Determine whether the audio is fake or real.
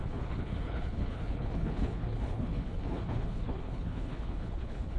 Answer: fake